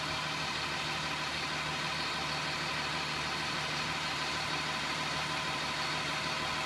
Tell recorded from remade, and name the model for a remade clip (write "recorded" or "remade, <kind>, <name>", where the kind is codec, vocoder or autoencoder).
recorded